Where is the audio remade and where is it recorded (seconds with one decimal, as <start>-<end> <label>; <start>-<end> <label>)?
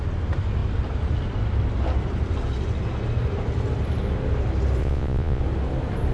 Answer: 0.0-4.8 recorded; 4.8-5.4 remade; 5.4-6.1 recorded